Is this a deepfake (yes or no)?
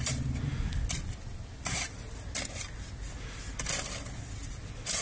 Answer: no